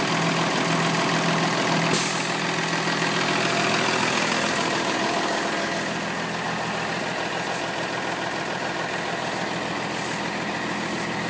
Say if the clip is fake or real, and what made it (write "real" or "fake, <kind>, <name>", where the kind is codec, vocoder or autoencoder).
real